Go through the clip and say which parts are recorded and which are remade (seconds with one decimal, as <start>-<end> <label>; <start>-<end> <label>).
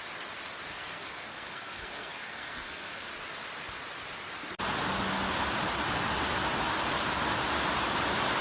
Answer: 0.0-0.7 recorded; 0.7-3.1 remade; 3.1-8.4 recorded